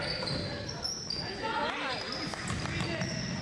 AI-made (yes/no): no